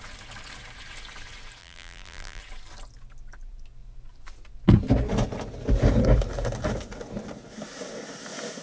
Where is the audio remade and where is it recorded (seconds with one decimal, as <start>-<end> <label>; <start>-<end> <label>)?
0.0-1.6 recorded; 1.6-2.4 remade; 2.4-8.6 recorded